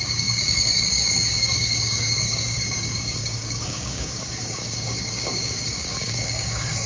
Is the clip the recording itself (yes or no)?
no